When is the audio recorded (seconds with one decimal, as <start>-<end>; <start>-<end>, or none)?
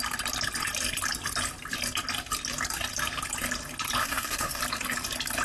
0.0-4.0; 4.6-5.4